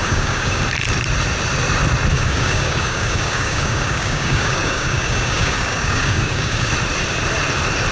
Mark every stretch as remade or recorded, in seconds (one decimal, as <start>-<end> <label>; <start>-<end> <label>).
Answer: 0.0-0.6 remade; 0.6-2.1 recorded; 2.1-6.7 remade; 6.7-7.9 recorded